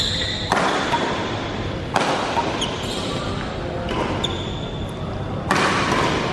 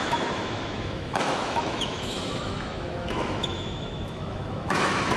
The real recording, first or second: first